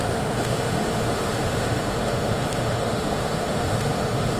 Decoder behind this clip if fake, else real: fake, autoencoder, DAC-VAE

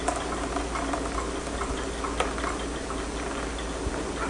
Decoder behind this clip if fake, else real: real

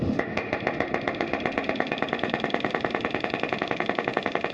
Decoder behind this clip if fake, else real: fake, autoencoder, DAC-VAE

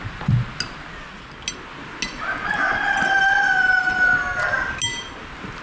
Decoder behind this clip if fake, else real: real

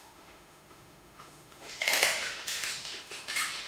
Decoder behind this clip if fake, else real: fake, autoencoder, DAC-VAE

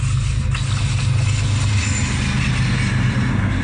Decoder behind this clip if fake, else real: real